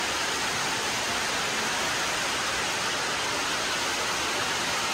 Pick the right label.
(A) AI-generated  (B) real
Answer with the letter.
B